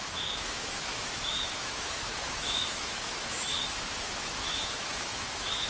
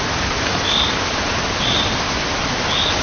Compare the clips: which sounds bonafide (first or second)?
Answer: second